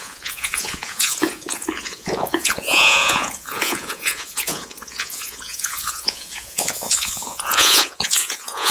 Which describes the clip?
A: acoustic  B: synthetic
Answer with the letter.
B